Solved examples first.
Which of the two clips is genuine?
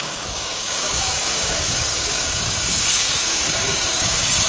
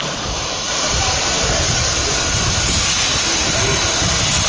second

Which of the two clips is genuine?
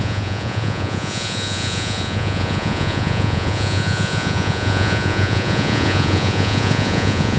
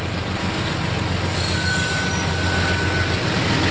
second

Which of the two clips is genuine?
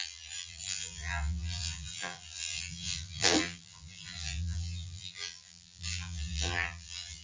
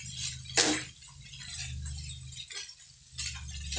second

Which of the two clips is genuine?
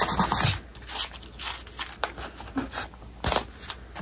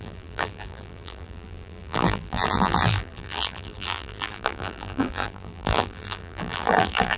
first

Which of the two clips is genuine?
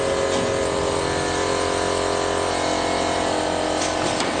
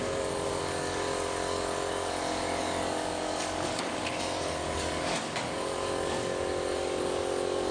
first